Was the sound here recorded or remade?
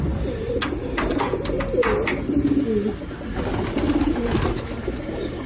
recorded